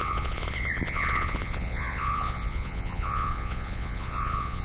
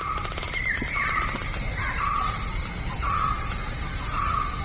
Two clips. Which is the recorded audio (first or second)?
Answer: second